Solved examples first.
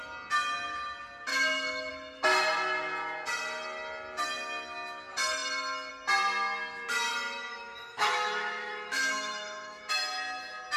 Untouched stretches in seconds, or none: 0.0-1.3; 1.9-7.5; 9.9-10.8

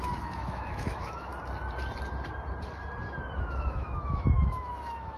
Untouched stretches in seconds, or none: 1.3-3.4